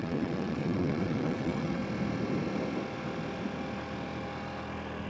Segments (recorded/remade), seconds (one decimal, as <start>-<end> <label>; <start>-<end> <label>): 0.0-1.8 remade; 1.8-5.1 recorded